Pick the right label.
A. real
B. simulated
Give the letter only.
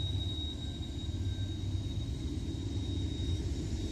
A